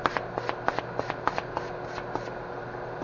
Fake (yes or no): no